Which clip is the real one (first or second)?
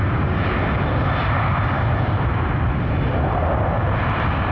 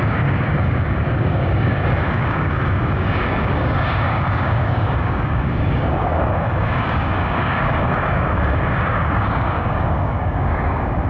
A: first